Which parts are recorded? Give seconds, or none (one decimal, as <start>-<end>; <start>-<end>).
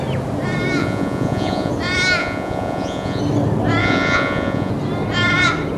0.0-0.8; 1.7-2.2; 3.2-3.8; 4.7-5.8